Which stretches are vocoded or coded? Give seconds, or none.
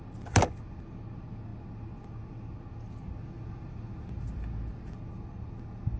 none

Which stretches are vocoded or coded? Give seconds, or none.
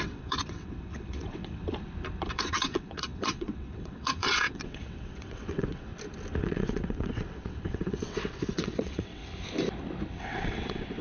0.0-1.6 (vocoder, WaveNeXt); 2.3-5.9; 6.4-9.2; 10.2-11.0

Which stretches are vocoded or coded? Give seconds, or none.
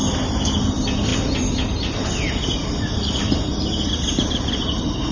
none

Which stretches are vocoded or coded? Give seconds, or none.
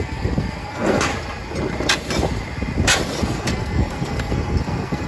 0.0-1.1 (codec, SNAC); 3.2-5.1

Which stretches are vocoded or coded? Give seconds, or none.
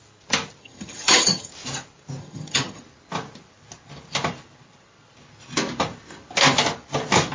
0.6-1.5 (vocoder, HiFi-GAN); 2.2-2.8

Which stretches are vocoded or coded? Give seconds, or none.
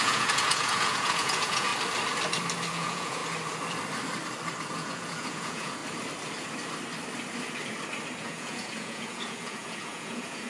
0.0-1.7 (vocoder, Vocos); 2.7-3.2; 4.7-5.8; 8.2-10.5